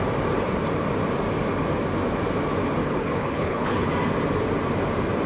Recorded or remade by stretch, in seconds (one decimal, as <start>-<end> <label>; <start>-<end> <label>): 0.0-2.8 recorded; 2.8-3.9 remade; 3.9-5.3 recorded